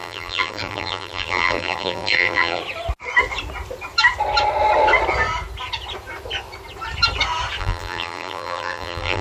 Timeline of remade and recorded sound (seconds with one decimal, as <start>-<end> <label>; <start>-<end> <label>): 0.0-2.6 remade; 2.6-7.6 recorded; 7.6-9.2 remade